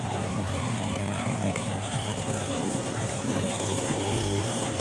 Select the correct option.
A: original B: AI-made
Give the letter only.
B